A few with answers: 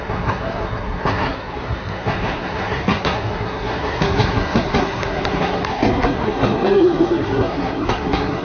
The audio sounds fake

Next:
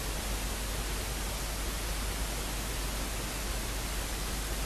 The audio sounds real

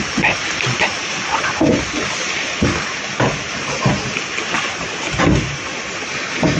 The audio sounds real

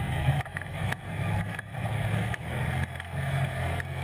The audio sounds fake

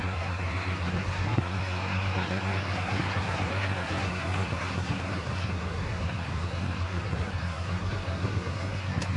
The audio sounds fake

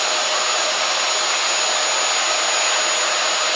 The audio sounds real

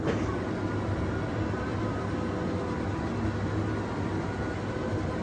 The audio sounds real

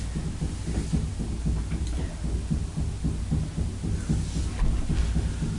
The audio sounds real